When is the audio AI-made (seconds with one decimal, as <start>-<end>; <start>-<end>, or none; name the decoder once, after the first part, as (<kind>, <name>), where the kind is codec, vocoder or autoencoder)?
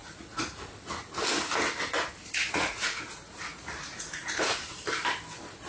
0.0-0.6 (vocoder, Vocos); 2.2-4.8